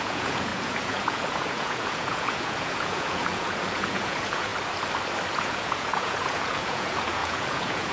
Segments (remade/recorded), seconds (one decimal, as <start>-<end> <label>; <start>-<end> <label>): 0.0-4.5 remade; 4.5-5.3 recorded; 5.3-7.9 remade